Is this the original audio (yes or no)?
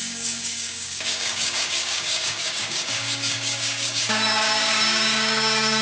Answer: no